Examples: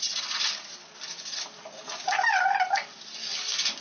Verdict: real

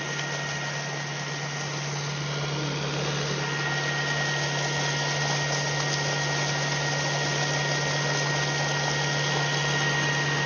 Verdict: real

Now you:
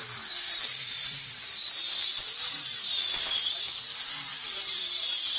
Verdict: fake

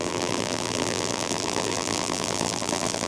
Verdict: fake